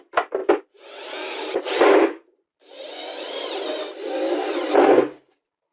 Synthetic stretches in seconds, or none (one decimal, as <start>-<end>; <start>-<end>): 0.0-0.4; 1.6-5.7